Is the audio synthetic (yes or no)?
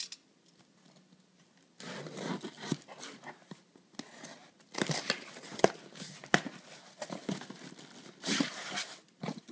no